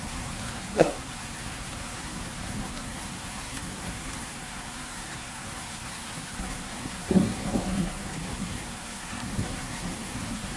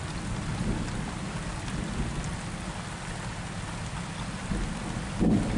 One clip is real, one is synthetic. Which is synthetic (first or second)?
first